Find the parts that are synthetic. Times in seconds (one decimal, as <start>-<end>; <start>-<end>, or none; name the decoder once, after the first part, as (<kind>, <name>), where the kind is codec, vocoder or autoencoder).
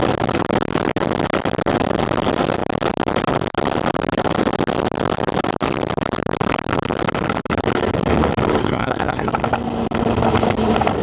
8.6-9.3 (codec, SNAC)